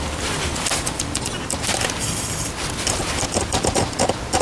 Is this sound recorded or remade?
recorded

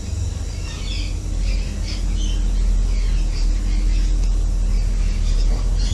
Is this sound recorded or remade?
recorded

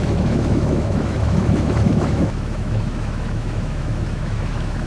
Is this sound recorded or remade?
remade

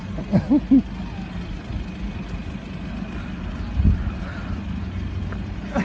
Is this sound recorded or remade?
recorded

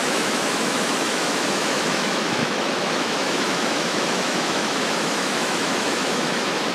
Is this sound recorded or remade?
remade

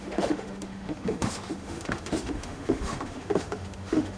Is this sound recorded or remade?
remade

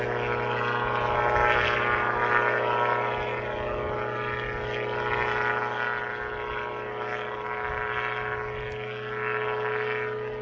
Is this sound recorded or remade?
recorded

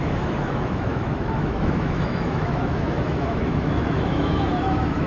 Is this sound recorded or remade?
remade